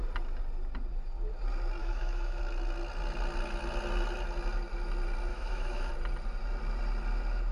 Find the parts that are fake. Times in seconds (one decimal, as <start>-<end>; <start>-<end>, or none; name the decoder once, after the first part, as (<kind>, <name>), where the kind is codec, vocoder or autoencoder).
1.8-2.4 (autoencoder, DAC-VAE); 5.3-5.9